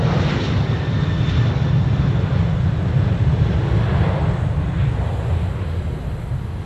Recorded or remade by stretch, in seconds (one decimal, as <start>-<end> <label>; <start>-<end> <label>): 0.0-6.7 recorded